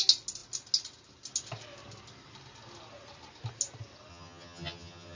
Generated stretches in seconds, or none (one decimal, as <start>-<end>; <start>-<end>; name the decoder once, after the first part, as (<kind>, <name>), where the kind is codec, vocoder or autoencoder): 4.1-5.2 (vocoder, HiFi-GAN)